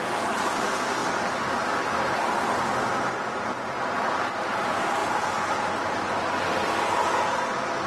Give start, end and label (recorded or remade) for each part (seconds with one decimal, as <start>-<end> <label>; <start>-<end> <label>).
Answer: 0.0-7.9 recorded